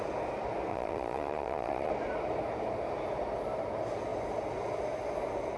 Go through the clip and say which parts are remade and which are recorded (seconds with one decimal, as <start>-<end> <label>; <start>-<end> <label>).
0.0-0.7 recorded; 0.7-1.9 remade; 1.9-5.6 recorded